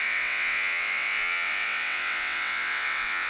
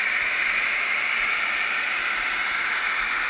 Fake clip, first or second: first